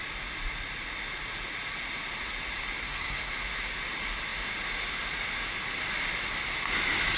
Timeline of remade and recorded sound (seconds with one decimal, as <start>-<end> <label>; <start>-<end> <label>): 0.0-2.8 recorded; 2.8-3.3 remade; 3.3-7.2 recorded